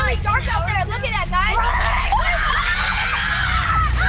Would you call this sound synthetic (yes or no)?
no